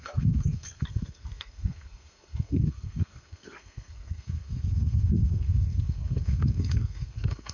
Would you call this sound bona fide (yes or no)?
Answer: no